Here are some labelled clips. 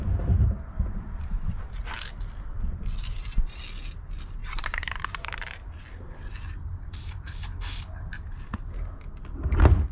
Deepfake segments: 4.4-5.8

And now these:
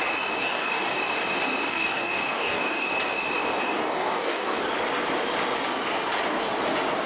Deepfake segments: 0.4-0.9; 1.7-2.9; 3.6-4.6

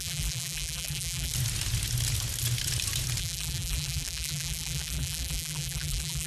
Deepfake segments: 0.0-1.3; 3.2-6.3

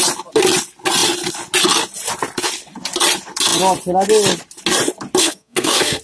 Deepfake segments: 5.2-6.0

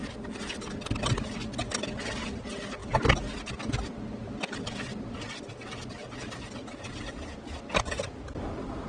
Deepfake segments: none

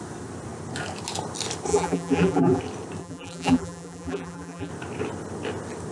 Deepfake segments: 1.7-2.6; 3.0-4.7